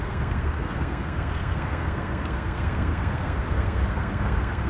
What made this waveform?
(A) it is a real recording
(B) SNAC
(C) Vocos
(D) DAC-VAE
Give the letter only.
B